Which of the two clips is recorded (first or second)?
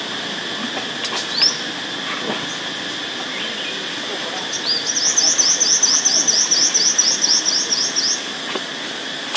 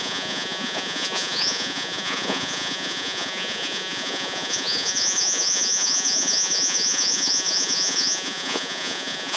first